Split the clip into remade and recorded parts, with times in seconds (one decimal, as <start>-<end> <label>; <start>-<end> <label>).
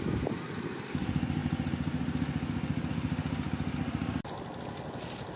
0.0-5.4 recorded